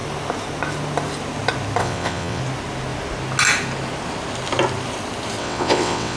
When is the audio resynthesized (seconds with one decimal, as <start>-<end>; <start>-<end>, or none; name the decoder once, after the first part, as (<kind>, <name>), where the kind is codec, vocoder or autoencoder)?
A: 1.8-2.4 (vocoder, WaveNeXt); 5.4-6.2